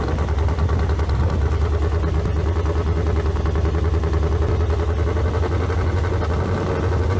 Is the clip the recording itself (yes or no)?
yes